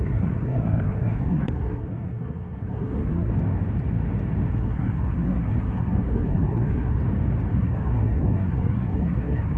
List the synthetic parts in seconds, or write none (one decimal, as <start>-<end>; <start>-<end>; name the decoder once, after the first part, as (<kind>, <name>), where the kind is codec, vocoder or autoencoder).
0.0-3.3 (codec, SNAC); 4.5-7.0; 7.5-9.6